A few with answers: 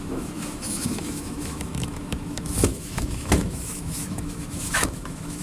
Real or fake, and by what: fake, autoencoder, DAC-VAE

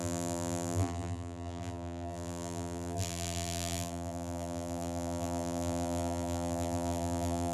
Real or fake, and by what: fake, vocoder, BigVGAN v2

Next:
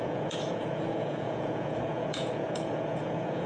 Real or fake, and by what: fake, vocoder, Vocos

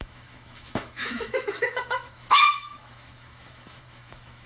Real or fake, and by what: fake, autoencoder, DAC-VAE